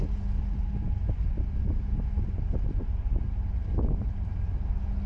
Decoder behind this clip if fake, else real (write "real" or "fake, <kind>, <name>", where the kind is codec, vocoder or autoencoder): real